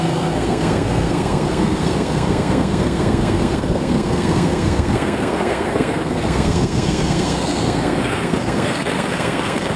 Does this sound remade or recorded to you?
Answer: remade